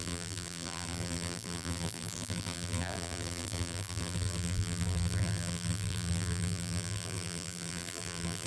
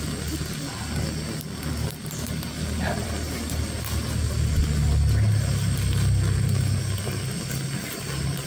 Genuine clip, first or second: second